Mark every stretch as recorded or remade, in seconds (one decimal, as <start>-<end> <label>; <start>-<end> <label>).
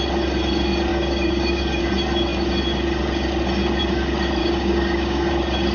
0.0-0.9 recorded; 0.9-1.8 remade; 1.8-4.4 recorded; 4.4-5.3 remade; 5.3-5.7 recorded